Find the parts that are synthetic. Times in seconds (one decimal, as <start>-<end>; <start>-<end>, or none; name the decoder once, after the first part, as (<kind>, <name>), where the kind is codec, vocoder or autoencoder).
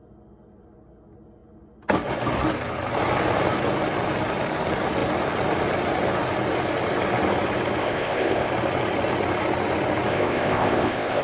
7.8-8.5 (codec, ZipCodec); 10.1-11.2